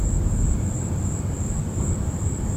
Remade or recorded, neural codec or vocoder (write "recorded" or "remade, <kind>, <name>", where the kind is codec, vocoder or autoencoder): remade, vocoder, BigVGAN v2